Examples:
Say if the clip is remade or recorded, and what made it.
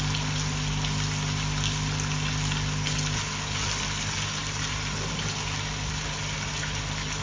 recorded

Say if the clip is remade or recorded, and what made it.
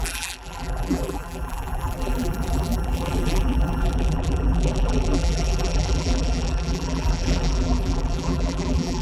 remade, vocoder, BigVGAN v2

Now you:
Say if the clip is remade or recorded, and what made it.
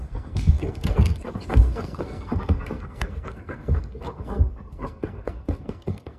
remade, codec, SNAC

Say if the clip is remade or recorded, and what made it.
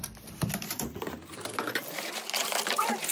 recorded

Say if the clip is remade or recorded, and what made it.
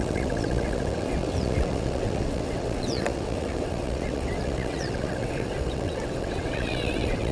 remade, vocoder, WaveNeXt